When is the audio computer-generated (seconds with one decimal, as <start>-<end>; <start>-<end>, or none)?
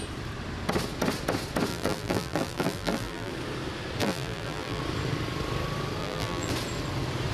1.7-3.3; 4.0-4.8; 6.0-6.5